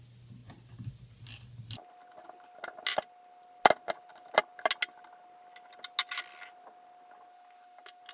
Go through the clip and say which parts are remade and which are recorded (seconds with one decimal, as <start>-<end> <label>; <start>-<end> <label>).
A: 0.0-8.1 recorded